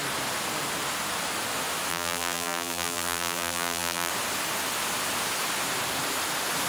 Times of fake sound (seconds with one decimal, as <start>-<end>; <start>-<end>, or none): 1.9-4.1